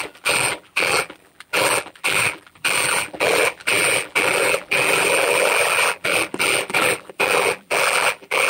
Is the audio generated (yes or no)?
yes